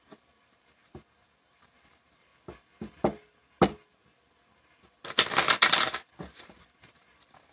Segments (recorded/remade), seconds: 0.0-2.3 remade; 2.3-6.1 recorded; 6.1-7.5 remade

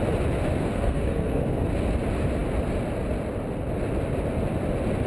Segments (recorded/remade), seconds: 0.0-0.6 recorded; 0.6-1.4 remade; 1.4-5.1 recorded